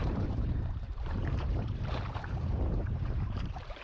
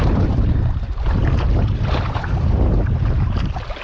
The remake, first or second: first